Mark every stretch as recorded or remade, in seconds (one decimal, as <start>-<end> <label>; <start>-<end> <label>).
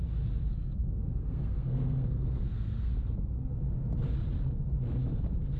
0.0-0.5 recorded; 0.5-3.4 remade; 3.4-5.6 recorded